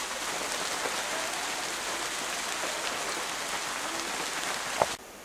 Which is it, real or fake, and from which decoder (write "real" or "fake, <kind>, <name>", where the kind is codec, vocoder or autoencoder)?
real